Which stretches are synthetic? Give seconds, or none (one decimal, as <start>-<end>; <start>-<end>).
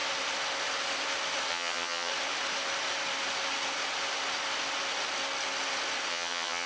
1.5-2.1; 6.1-6.7